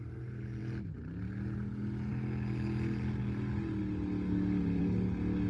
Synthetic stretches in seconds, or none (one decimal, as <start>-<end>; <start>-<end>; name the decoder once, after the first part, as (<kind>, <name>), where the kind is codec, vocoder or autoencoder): none